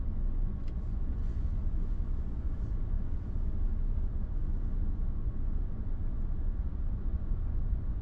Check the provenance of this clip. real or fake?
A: fake